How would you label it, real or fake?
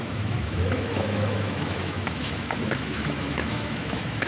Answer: fake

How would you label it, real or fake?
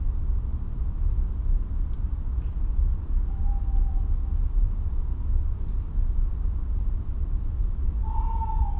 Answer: real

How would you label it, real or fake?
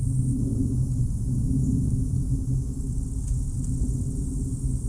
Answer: real